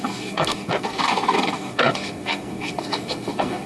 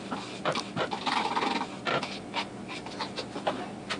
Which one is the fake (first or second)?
first